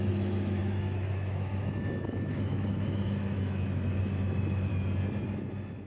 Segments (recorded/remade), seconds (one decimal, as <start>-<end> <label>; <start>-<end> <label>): 0.0-4.7 remade; 4.7-5.9 recorded